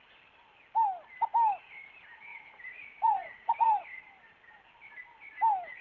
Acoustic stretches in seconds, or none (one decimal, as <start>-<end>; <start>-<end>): 0.0-2.3; 4.0-5.8